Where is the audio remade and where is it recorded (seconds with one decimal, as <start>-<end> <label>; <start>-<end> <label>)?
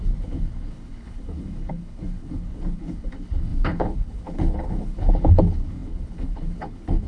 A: 0.0-7.1 remade